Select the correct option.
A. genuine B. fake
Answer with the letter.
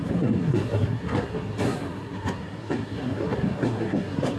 B